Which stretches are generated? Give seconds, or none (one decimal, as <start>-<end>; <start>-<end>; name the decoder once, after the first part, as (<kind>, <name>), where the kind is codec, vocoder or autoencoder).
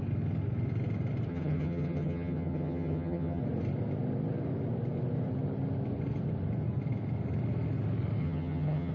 1.3-3.4 (vocoder, HiFi-GAN); 8.2-8.9